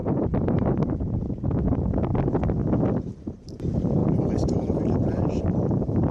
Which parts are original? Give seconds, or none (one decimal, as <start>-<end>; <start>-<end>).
0.0-1.6; 2.1-2.9